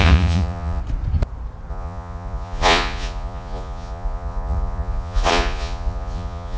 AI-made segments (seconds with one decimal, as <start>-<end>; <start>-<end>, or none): 0.0-0.8; 1.7-6.6